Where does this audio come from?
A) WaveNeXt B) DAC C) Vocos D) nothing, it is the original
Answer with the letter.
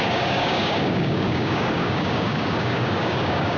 B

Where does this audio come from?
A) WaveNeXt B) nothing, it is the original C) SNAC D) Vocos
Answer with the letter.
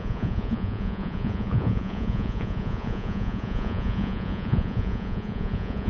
D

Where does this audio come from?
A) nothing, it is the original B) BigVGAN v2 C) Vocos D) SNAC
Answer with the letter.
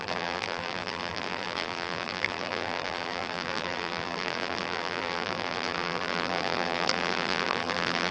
B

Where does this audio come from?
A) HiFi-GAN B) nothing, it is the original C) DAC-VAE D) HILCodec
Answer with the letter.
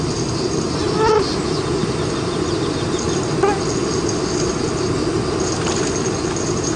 B